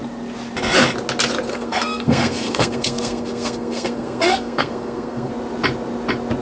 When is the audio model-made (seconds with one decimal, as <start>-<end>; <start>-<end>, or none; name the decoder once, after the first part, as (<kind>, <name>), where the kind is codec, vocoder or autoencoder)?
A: 1.5-5.3 (codec, SNAC)